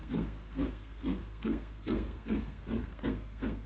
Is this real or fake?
fake